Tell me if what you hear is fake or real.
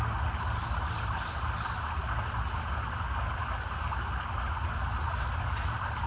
real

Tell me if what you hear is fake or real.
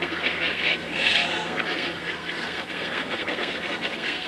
fake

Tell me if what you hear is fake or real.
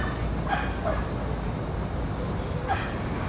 real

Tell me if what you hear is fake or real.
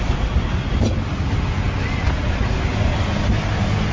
real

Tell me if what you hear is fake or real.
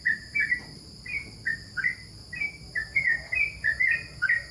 fake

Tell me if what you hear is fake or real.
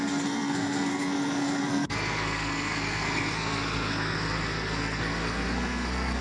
fake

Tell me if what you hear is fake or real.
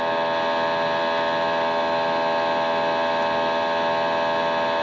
real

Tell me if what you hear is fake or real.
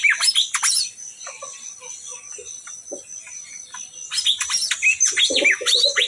real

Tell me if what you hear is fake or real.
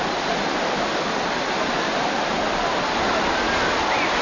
real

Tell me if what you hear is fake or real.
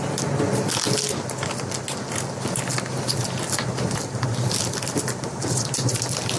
real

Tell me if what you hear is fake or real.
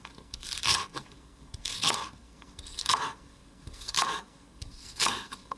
fake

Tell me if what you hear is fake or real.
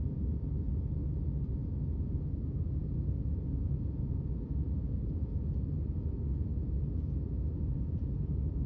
fake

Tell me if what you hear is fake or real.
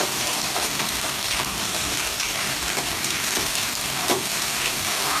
fake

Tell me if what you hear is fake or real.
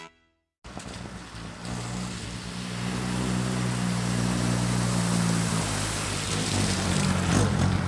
real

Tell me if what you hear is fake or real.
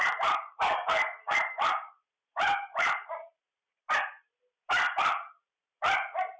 fake